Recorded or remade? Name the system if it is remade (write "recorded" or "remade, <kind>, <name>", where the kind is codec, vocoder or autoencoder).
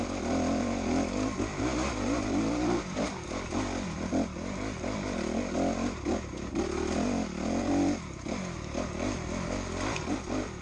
recorded